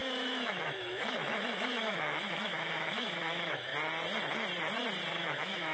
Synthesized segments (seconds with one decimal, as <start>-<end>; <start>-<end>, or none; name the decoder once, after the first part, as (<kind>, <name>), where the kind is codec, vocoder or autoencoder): 0.0-3.7 (autoencoder, DAC-VAE); 5.1-5.7